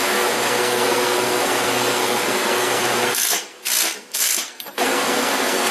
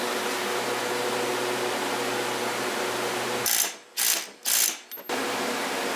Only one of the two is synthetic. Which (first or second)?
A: first